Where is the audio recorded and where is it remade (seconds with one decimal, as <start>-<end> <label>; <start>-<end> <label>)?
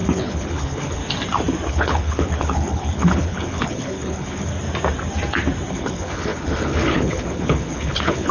0.0-1.0 remade; 1.0-1.7 recorded; 1.7-4.5 remade; 4.5-5.7 recorded; 5.7-8.3 remade